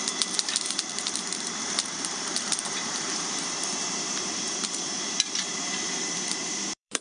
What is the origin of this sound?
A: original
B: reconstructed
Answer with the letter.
B